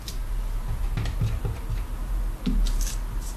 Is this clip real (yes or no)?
yes